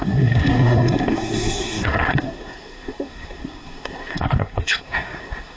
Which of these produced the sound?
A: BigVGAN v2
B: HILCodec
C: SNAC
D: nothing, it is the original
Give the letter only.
C